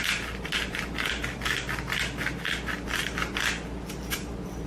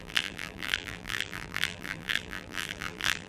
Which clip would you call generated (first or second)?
second